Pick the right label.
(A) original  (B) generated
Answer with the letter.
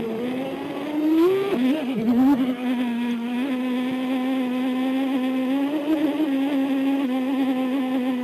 A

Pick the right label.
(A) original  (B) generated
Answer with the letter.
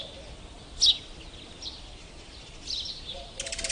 A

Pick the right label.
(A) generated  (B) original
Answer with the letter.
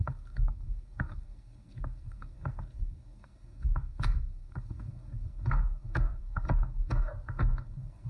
A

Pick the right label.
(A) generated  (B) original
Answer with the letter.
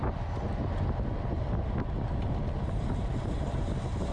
B